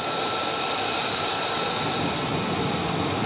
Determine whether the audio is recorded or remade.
recorded